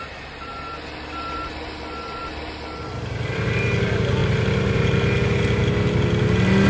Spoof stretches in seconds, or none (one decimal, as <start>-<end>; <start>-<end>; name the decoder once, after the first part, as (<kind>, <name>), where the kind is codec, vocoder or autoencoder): none